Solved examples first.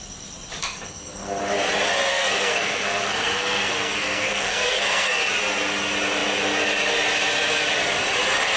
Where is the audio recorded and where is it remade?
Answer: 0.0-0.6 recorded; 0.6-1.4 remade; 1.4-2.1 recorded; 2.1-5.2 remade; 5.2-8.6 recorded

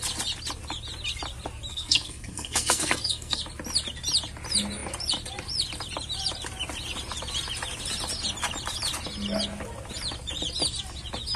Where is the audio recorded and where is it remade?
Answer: 0.0-1.7 recorded; 1.7-3.4 remade; 3.4-11.4 recorded

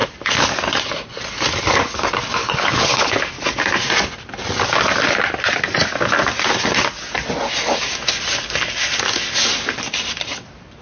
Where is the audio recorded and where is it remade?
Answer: 0.0-2.4 recorded; 2.4-3.2 remade; 3.2-10.8 recorded

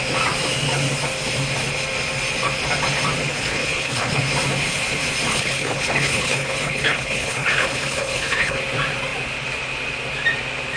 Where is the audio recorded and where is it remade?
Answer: 0.0-3.3 recorded; 3.3-4.2 remade; 4.2-5.3 recorded; 5.3-8.6 remade; 8.6-10.8 recorded

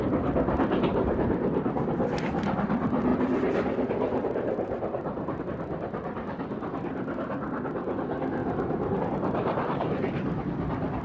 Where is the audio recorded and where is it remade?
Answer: 0.0-0.9 recorded; 0.9-1.6 remade; 1.6-3.1 recorded; 3.1-5.4 remade; 5.4-8.4 recorded; 8.4-9.0 remade; 9.0-9.4 recorded; 9.4-10.4 remade; 10.4-11.0 recorded

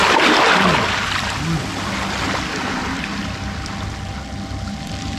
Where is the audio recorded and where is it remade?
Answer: 0.0-5.2 recorded